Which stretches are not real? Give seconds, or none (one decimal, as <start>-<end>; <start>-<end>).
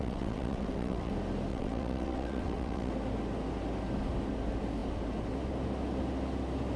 0.0-1.1; 1.5-2.9